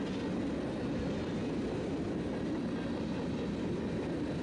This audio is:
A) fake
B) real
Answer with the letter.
B